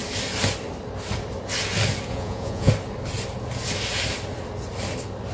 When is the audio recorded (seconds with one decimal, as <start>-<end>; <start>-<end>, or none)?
0.0-2.1; 2.7-5.3